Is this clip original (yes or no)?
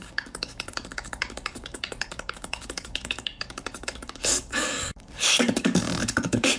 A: no